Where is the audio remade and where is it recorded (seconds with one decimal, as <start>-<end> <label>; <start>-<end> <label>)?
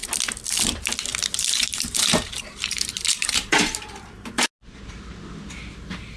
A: 0.0-1.1 recorded; 1.1-4.3 remade; 4.3-6.2 recorded